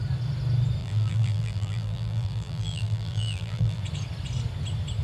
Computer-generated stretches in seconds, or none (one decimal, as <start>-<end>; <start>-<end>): 0.8-3.8